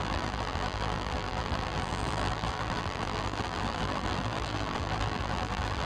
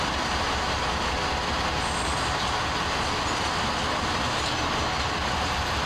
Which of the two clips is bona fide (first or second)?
second